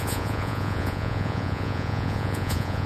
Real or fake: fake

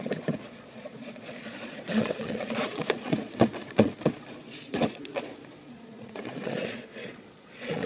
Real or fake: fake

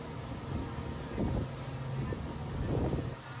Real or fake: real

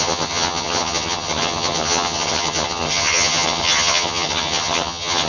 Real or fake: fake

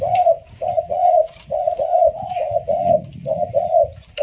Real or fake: fake